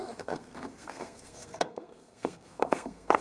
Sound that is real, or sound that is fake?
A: fake